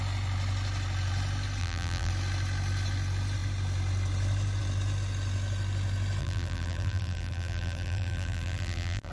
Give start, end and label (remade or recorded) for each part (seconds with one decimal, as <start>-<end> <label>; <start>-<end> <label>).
0.0-1.6 recorded; 1.6-2.1 remade; 2.1-6.2 recorded; 6.2-9.1 remade